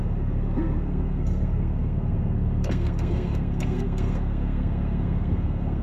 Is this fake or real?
fake